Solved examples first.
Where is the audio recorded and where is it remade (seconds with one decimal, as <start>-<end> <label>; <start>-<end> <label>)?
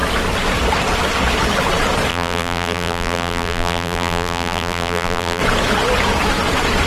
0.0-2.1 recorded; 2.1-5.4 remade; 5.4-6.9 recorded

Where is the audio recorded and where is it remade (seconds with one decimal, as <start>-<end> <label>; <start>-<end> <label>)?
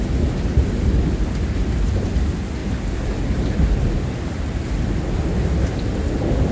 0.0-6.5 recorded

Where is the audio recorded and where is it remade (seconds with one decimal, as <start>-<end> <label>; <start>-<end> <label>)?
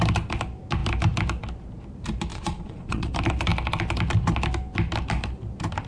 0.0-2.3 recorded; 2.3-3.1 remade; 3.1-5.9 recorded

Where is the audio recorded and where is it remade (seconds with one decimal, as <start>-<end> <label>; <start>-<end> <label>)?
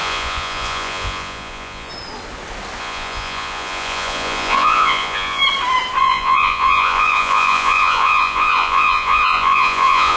0.0-1.9 remade; 1.9-2.8 recorded; 2.8-5.4 remade; 5.4-6.0 recorded; 6.0-10.2 remade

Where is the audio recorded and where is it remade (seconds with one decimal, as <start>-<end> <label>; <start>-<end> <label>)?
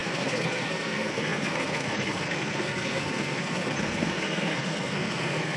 0.0-5.6 remade